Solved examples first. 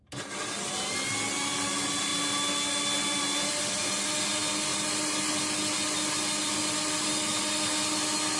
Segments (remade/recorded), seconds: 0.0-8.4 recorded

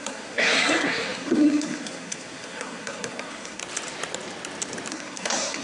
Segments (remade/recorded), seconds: 0.0-3.6 remade; 3.6-4.9 recorded; 4.9-5.6 remade

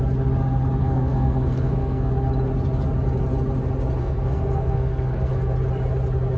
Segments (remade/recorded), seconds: 0.0-0.8 recorded; 0.8-2.1 remade; 2.1-4.0 recorded; 4.0-5.3 remade; 5.3-6.4 recorded